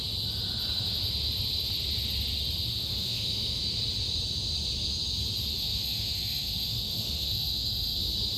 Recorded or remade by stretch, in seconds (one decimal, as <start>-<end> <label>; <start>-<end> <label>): 0.0-2.9 recorded; 2.9-3.6 remade; 3.6-5.5 recorded; 5.5-8.0 remade; 8.0-8.4 recorded